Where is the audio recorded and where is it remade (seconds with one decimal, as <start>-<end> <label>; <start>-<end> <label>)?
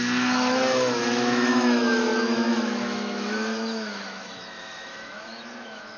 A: 0.0-6.0 remade